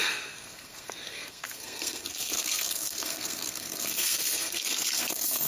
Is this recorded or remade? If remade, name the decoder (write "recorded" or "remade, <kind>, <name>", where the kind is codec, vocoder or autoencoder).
remade, codec, SNAC